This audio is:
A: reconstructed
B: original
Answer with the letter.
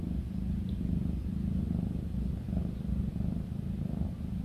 B